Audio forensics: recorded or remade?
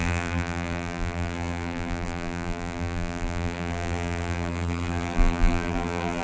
remade